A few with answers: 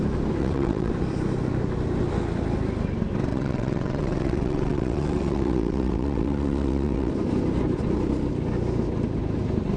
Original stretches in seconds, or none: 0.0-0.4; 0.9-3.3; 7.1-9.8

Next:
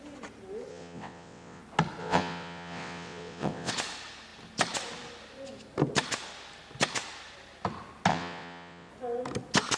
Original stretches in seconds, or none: 0.0-0.7; 1.6-2.0; 3.7-8.1; 8.9-9.8

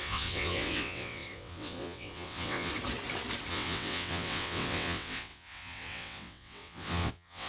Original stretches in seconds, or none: 2.7-3.5

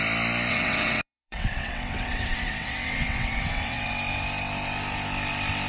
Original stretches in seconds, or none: 0.0-0.5; 3.9-5.7

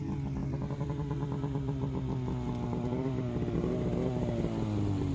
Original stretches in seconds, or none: 0.0-5.1

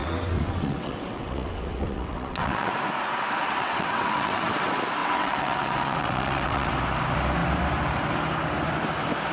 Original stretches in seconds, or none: 2.7-3.6; 4.5-5.0; 6.7-9.3

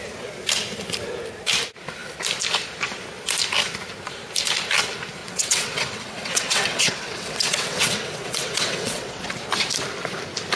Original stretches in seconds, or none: 0.0-5.2; 9.2-10.6